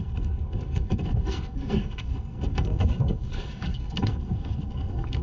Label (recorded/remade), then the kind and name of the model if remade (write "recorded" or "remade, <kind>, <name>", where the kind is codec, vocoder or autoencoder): remade, codec, SNAC